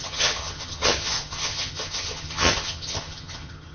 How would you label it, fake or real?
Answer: fake